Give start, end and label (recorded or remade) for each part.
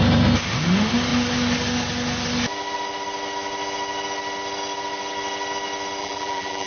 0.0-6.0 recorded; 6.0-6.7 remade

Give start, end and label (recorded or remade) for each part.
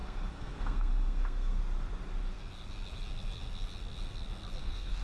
0.0-1.6 remade; 1.6-4.6 recorded; 4.6-5.0 remade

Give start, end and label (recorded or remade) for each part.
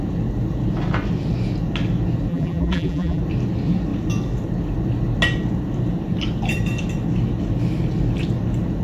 0.0-2.3 recorded; 2.3-3.2 remade; 3.2-8.8 recorded